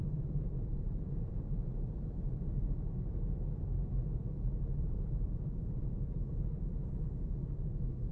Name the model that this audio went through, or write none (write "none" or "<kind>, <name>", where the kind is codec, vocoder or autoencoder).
vocoder, BigVGAN v2